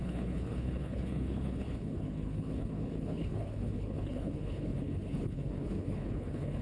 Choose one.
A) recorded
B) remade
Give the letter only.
B